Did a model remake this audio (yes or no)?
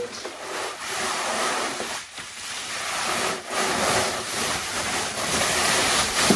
yes